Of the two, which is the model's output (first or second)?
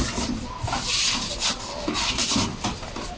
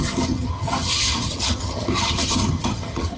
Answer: second